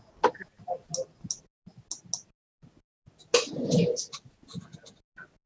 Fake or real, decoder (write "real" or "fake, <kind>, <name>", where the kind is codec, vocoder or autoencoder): real